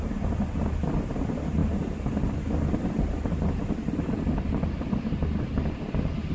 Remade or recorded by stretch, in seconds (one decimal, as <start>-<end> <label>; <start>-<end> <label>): 0.0-6.3 recorded